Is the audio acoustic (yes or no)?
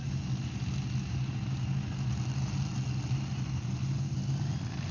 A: yes